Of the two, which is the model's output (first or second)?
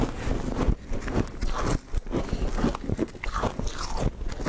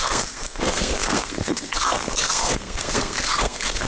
second